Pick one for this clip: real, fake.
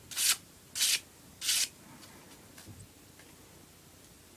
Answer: real